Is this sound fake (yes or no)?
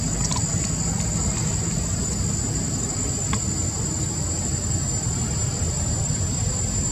no